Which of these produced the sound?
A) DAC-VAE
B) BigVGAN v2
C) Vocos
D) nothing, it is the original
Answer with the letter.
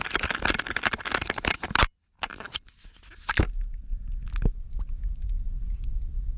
D